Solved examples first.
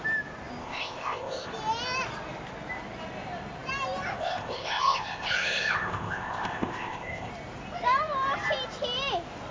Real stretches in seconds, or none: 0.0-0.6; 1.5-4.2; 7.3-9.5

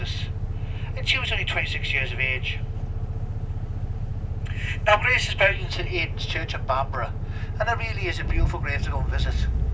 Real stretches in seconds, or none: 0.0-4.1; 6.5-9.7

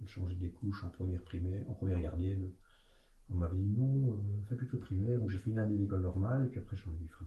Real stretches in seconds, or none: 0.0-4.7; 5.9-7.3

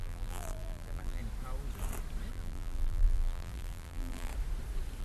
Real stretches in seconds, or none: 1.2-2.3; 4.3-5.0

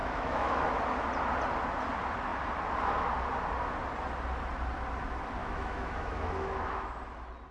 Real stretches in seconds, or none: 0.7-5.4; 6.9-7.5